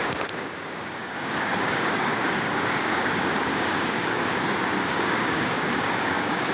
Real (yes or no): no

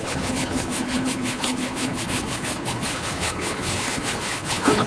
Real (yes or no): no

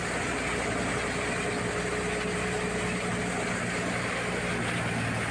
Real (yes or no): yes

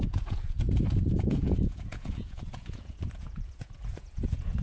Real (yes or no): no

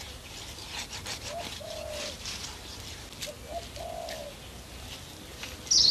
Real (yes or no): yes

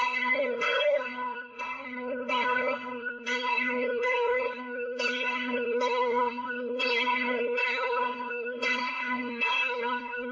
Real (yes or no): no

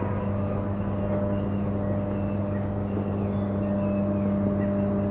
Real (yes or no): yes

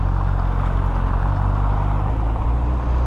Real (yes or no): yes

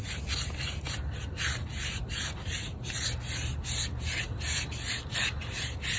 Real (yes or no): yes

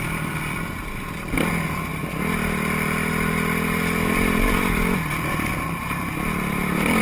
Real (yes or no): yes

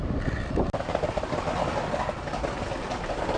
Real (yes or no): yes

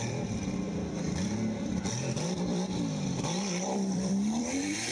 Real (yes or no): no